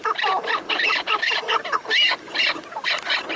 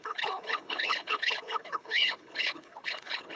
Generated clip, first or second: second